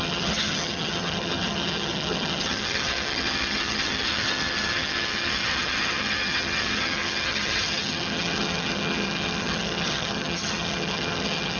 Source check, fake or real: fake